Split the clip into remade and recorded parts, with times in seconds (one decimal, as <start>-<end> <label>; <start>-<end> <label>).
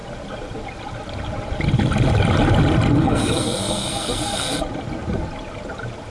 0.0-3.0 recorded; 3.0-4.6 remade; 4.6-6.1 recorded